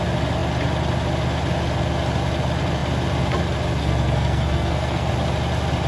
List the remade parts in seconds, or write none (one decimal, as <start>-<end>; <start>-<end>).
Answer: 3.8-5.1

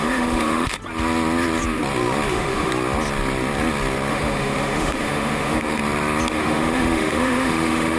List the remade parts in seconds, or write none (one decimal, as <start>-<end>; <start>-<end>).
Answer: 0.0-0.8; 2.3-2.7; 4.1-5.8; 6.3-8.0

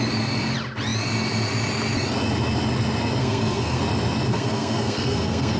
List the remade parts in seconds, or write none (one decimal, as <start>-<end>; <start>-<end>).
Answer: 3.2-3.8; 4.3-5.6

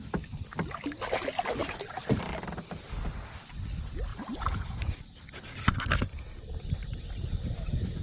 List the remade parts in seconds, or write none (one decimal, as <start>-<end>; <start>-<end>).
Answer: 1.6-2.2; 4.1-5.0

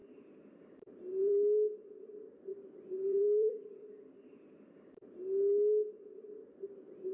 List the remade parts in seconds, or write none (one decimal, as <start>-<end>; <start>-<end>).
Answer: 0.0-1.3; 2.5-5.2

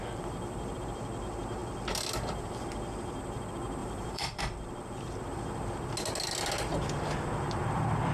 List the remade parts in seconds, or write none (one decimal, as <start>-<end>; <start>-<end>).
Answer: 3.8-4.4

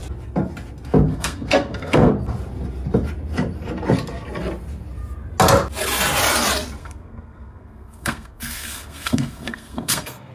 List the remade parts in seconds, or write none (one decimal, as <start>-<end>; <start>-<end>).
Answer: 1.1-2.1; 6.8-10.3

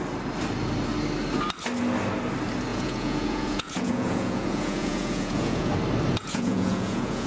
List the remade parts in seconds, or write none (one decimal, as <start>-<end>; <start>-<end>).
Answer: 2.7-5.7; 6.2-7.3